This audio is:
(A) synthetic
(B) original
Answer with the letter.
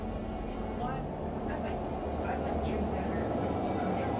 B